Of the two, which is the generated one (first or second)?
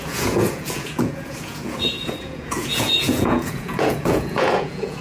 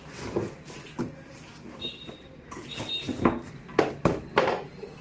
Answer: first